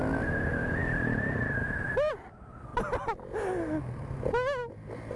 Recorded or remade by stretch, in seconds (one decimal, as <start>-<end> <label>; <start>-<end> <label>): 0.0-0.8 recorded; 0.8-2.1 remade; 2.1-2.7 recorded; 2.7-3.3 remade; 3.3-5.2 recorded